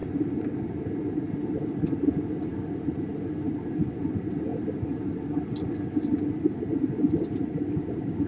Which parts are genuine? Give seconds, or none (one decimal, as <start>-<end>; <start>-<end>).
0.6-8.3